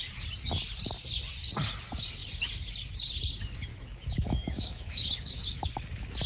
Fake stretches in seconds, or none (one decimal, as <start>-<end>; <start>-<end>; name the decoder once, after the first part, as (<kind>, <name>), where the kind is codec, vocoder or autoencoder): 3.7-5.7 (autoencoder, DAC-VAE)